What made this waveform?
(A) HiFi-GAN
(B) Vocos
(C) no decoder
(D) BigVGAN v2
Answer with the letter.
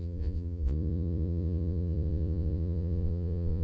B